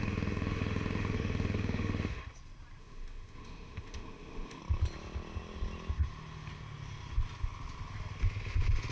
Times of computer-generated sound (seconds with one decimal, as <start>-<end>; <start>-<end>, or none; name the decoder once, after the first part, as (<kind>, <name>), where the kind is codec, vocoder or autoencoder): 0.0-2.2 (autoencoder, DAC-VAE); 2.8-4.6